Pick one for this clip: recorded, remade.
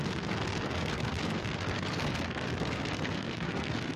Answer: remade